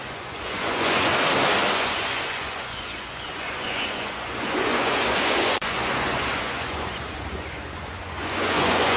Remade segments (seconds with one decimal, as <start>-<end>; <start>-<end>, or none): 0.0-1.1; 1.7-9.0